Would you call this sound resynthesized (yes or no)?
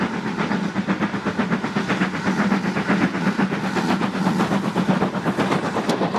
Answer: no